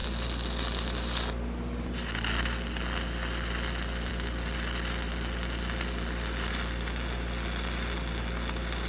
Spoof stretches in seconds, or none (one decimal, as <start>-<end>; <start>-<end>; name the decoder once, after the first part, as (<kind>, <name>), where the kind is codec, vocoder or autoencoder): none